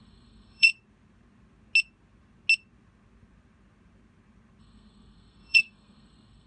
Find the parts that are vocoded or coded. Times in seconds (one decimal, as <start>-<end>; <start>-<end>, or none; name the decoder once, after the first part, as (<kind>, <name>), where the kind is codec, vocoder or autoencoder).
0.0-0.7 (codec, SNAC); 4.6-6.5